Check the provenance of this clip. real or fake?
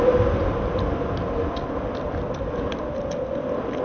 real